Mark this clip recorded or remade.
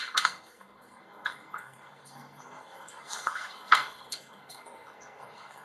remade